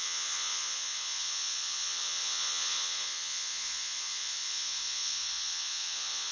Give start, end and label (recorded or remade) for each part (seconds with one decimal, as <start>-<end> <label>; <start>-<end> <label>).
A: 0.0-6.3 remade